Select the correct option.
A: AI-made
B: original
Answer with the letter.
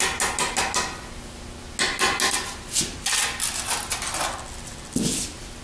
B